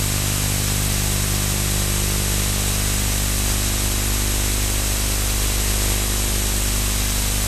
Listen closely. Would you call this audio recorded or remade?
recorded